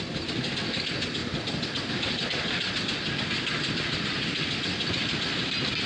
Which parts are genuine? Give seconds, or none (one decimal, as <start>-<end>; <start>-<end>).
0.0-5.9